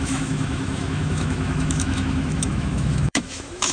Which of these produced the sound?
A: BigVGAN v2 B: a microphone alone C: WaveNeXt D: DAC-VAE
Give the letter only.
D